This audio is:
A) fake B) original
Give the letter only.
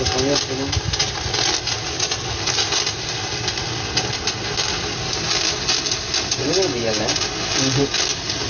B